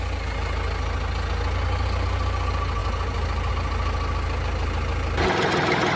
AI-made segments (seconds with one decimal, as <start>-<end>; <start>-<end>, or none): none